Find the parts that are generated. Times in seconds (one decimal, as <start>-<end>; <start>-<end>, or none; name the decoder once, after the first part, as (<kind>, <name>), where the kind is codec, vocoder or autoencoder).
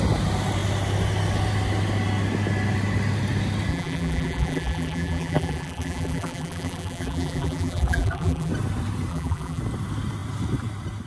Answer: 3.7-8.5 (vocoder, BigVGAN v2); 9.1-9.6